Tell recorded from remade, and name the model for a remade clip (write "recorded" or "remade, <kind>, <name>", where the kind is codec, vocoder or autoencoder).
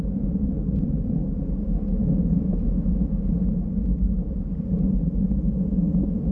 recorded